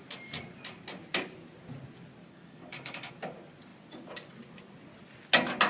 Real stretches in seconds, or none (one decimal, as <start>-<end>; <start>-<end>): 0.0-2.2; 3.1-5.7